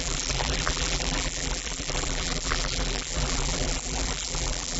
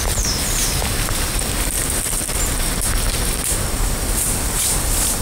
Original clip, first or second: second